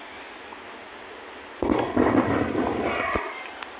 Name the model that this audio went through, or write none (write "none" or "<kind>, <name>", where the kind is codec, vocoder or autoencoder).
none